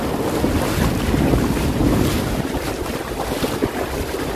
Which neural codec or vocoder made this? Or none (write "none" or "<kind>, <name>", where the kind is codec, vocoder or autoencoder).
none